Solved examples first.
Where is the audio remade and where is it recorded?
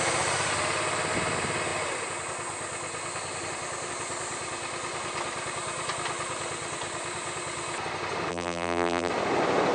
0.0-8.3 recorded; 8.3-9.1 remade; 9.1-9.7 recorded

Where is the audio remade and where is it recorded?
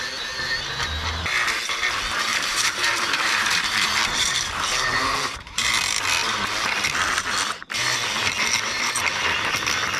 0.0-2.3 recorded; 2.3-5.7 remade; 5.7-10.0 recorded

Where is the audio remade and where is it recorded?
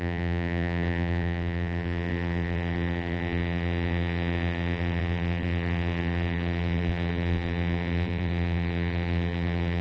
0.0-9.8 remade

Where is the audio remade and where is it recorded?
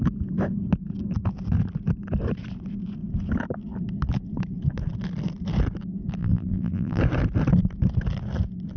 0.0-6.2 recorded; 6.2-7.0 remade; 7.0-8.8 recorded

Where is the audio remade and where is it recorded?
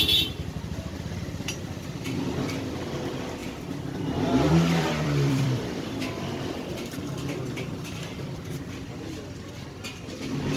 0.0-3.4 recorded; 3.4-6.1 remade; 6.1-10.6 recorded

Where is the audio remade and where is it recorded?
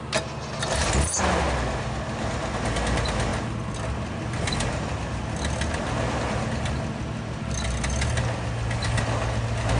0.0-9.8 recorded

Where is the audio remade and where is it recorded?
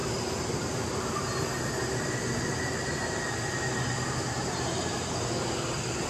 0.0-2.1 remade; 2.1-6.1 recorded